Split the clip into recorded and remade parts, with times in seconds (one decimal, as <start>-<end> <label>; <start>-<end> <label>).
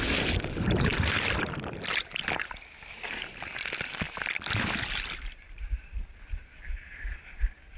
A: 0.0-0.9 recorded; 0.9-5.6 remade; 5.6-7.8 recorded